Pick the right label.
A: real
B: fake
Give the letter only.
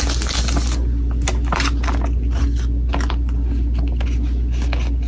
A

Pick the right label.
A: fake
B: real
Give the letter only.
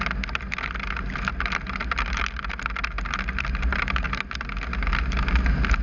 B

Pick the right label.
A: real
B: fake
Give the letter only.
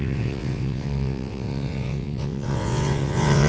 B